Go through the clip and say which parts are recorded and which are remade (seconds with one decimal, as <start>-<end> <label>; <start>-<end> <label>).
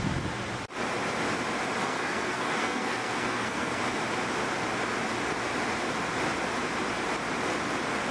0.0-1.8 recorded; 1.8-3.8 remade; 3.8-8.1 recorded